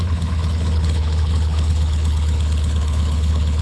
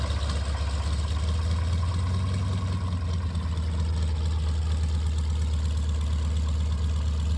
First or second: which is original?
second